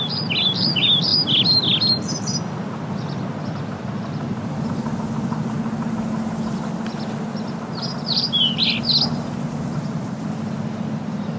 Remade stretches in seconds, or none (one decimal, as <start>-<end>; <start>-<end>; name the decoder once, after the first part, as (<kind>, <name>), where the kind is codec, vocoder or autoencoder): none